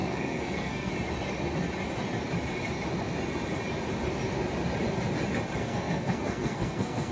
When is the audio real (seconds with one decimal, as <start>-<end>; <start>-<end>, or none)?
0.9-5.6